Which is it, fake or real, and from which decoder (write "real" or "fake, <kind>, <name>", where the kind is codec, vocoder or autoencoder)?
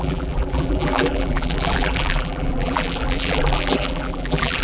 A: fake, vocoder, BigVGAN v2